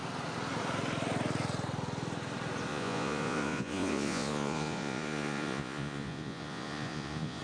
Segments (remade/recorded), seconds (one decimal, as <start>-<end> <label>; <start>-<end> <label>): 0.0-2.7 recorded; 2.7-7.4 remade